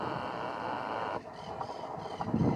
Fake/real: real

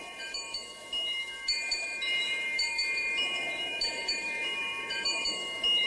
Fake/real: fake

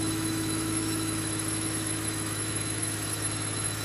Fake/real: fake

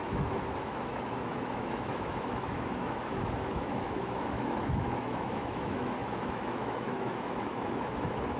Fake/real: fake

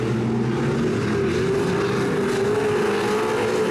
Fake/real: real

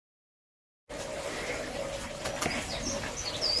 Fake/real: real